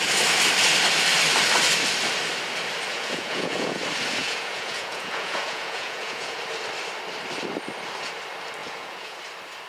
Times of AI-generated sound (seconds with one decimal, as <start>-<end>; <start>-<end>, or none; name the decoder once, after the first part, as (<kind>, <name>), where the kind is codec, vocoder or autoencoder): 2.9-3.8 (vocoder, Vocos); 4.2-6.4; 8.6-9.2